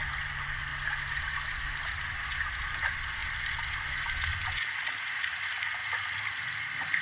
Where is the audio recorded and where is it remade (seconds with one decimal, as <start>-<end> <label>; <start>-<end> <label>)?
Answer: 0.0-7.0 recorded